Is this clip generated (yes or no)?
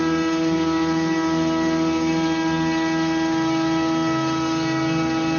no